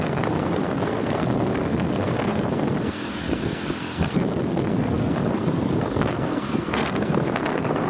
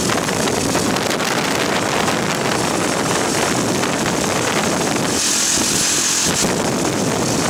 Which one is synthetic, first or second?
first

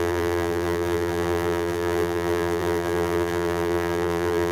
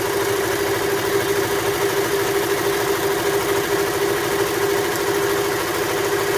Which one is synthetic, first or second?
first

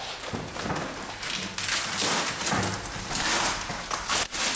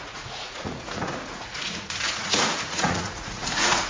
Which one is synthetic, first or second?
second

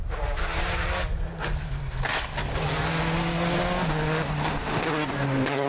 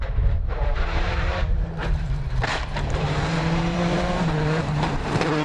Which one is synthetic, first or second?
second